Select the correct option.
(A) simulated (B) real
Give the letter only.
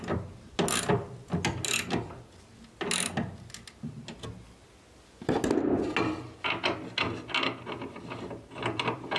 B